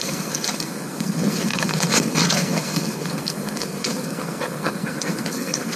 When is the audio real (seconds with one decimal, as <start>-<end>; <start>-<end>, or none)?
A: none